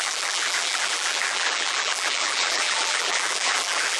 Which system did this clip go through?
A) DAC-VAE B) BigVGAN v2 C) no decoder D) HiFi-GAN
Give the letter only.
B